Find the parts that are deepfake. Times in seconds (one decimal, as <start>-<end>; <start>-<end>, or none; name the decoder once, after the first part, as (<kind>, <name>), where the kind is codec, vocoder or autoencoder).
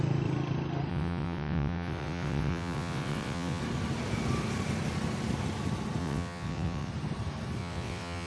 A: 0.9-3.6 (vocoder, WaveNeXt); 6.0-6.9; 7.6-8.3